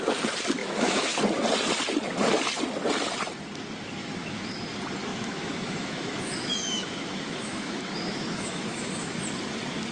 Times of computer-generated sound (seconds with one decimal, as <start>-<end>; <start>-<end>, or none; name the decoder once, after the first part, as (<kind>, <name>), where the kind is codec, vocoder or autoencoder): 0.6-1.2 (autoencoder, DAC-VAE); 4.0-4.6; 5.1-9.2